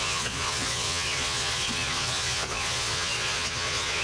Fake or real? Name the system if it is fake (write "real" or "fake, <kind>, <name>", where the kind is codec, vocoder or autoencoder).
fake, vocoder, Vocos